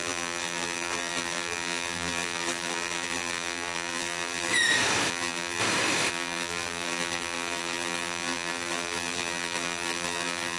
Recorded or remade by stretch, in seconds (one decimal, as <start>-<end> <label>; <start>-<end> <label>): 0.0-4.5 remade; 4.5-5.1 recorded; 5.1-5.6 remade; 5.6-6.1 recorded; 6.1-10.6 remade

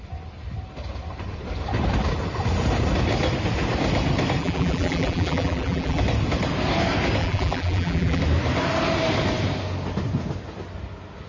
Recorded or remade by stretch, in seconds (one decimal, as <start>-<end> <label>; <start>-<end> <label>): 0.0-4.4 recorded; 4.4-6.0 remade; 6.0-7.2 recorded; 7.2-8.2 remade; 8.2-11.3 recorded

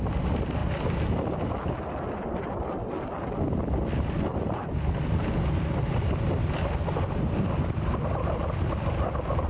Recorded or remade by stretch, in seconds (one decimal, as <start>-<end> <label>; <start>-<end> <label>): 0.0-9.5 recorded

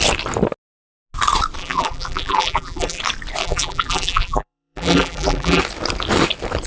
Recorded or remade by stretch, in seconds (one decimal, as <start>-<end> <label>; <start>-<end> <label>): 0.0-1.6 recorded; 1.6-3.0 remade; 3.0-3.4 recorded; 3.4-5.6 remade; 5.6-6.7 recorded

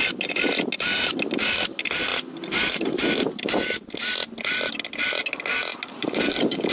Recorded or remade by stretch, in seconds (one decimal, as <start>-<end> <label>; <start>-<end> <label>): 0.0-5.7 recorded; 5.7-6.7 remade